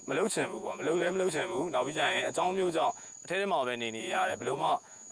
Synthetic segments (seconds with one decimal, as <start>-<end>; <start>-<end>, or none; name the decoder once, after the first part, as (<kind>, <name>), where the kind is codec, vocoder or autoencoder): 0.0-3.1 (vocoder, Vocos); 4.0-5.1